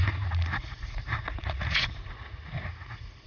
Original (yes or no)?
no